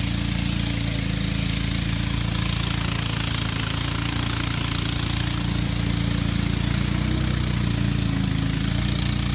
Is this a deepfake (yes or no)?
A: no